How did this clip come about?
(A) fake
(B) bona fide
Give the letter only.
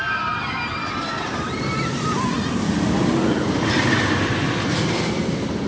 B